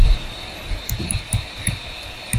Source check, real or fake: real